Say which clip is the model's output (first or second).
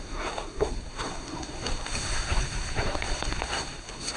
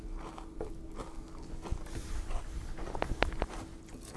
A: first